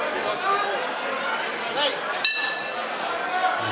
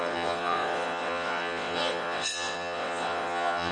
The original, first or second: first